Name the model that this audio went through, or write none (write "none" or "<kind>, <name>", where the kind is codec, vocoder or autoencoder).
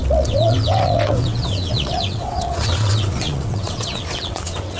vocoder, WaveNeXt